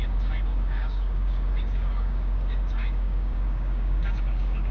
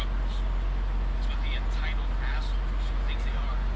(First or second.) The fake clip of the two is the first